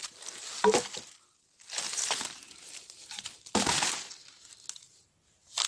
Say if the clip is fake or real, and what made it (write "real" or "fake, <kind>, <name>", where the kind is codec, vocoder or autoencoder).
real